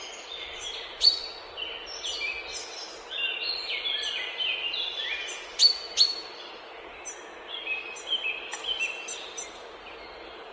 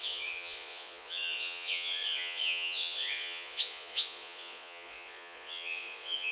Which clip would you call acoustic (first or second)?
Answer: first